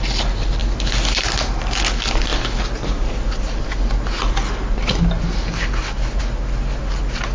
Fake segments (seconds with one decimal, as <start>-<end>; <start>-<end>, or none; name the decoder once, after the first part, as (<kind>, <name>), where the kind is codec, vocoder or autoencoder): none